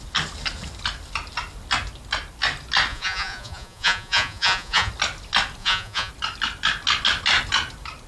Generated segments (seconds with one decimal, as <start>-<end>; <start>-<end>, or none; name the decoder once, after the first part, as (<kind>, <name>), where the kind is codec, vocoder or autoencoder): 2.9-4.9 (vocoder, Vocos); 5.6-6.1